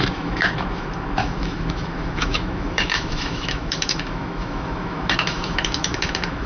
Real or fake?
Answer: fake